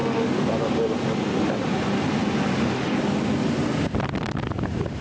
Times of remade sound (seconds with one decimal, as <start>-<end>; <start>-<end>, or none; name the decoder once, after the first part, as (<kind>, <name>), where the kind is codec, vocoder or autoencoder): 0.0-0.7 (codec, DAC)